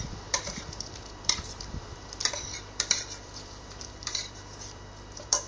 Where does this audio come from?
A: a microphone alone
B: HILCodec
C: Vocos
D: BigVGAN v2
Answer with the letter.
D